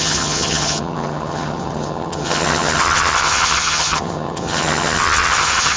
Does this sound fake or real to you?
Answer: fake